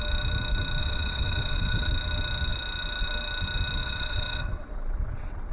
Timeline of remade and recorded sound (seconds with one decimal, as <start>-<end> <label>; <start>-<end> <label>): 0.0-0.8 recorded; 0.8-1.9 remade; 1.9-3.8 recorded; 3.8-5.5 remade